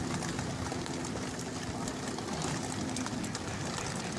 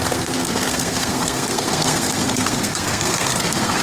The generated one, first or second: second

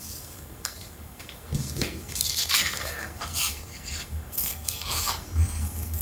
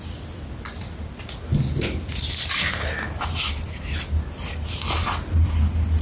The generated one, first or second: first